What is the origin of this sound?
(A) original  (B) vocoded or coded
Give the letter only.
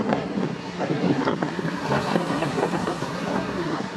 B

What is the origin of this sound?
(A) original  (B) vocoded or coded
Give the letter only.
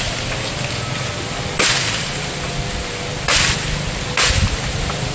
A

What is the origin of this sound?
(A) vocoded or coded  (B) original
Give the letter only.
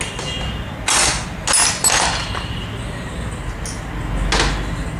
B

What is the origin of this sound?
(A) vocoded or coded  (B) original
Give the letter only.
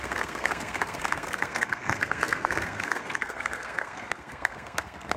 A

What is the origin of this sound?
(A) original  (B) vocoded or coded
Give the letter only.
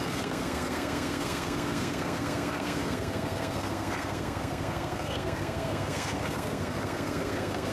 B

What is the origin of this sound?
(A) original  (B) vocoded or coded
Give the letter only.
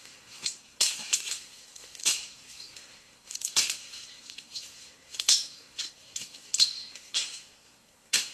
B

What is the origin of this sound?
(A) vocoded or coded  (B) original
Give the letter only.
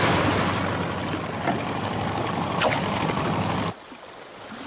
B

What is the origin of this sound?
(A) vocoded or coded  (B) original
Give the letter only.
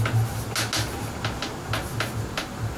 B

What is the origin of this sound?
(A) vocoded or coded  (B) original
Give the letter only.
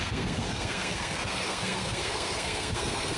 A